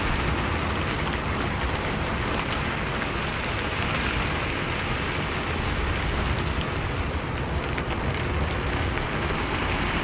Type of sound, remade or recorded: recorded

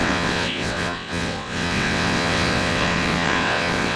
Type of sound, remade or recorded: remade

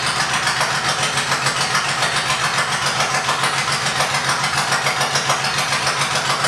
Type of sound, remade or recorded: recorded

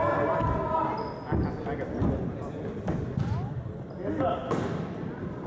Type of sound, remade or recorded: recorded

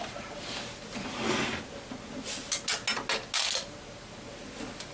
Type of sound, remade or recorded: recorded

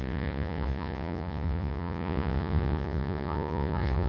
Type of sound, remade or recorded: remade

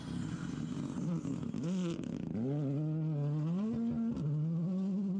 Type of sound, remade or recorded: recorded